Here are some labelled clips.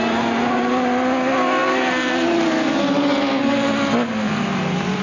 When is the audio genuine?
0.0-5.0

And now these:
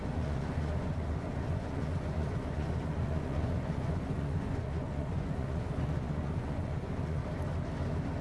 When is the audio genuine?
7.2-8.2

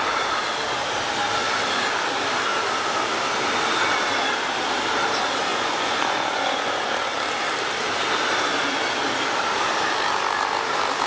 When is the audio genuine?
0.0-5.5; 7.1-11.1

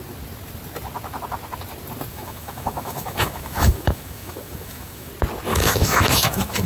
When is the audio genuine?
0.0-2.1; 5.1-5.5

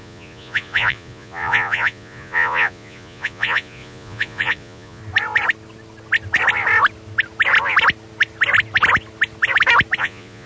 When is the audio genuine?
5.0-10.0